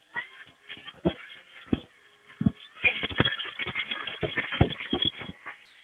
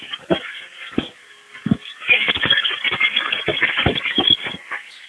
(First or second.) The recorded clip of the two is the first